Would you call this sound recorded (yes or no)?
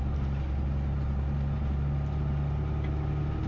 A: yes